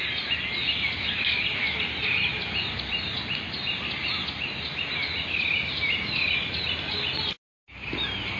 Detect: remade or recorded recorded